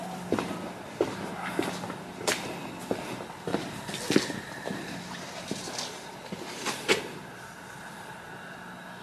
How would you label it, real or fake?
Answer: real